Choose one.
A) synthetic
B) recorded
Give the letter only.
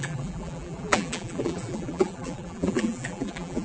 A